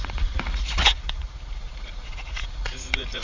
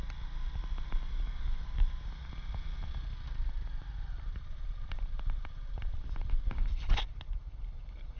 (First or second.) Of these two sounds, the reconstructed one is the first